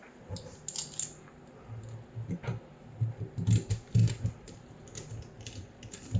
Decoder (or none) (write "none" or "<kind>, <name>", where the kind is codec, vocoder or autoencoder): none